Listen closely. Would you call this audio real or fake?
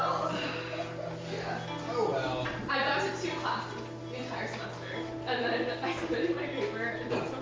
real